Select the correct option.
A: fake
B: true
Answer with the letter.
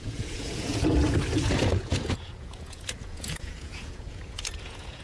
A